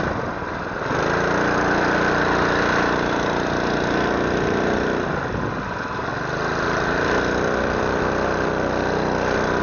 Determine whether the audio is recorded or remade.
recorded